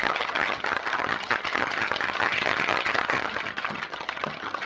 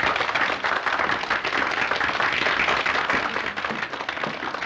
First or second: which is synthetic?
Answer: first